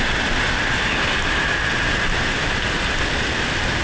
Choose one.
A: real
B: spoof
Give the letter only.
A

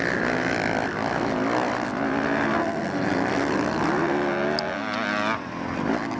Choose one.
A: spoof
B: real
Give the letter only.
B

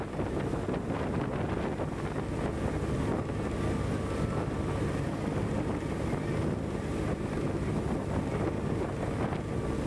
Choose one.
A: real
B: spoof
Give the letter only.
A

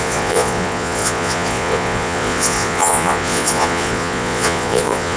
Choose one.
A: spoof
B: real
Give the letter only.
A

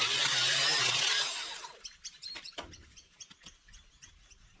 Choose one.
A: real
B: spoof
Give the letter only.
A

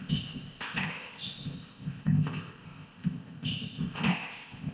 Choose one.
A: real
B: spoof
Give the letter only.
B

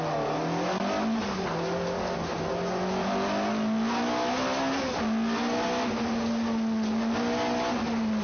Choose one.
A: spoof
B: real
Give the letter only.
B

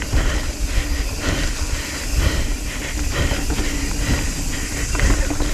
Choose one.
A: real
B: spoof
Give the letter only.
A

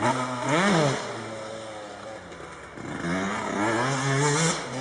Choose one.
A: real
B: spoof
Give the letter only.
A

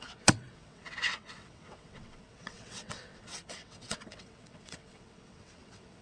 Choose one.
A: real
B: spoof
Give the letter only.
B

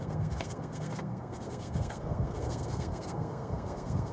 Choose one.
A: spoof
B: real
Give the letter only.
A